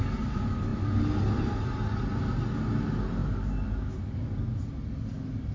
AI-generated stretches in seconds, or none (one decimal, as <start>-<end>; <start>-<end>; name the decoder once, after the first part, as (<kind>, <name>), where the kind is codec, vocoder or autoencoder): none